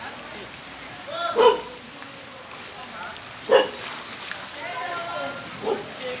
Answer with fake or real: real